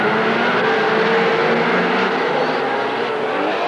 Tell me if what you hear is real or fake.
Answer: real